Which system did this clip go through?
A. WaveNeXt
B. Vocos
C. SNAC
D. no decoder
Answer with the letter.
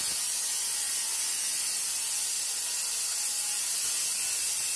D